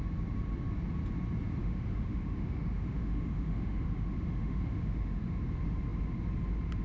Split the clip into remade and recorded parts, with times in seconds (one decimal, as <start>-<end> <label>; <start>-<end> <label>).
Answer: 0.0-1.6 recorded; 1.6-5.4 remade; 5.4-6.8 recorded